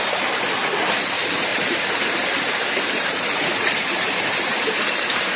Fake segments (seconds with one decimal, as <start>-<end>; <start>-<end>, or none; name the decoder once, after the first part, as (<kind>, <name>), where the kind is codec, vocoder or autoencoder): 1.5-4.6 (vocoder, BigVGAN v2)